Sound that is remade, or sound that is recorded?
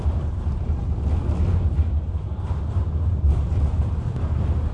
remade